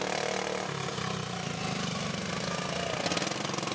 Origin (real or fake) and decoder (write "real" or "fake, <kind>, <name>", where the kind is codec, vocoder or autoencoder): real